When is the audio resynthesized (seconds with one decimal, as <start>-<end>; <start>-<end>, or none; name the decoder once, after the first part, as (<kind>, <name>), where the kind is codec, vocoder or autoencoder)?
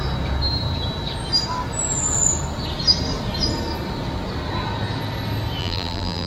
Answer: 5.6-6.3 (vocoder, BigVGAN v2)